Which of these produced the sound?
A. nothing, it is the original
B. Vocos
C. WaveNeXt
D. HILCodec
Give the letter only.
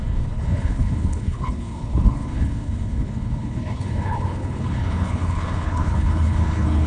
D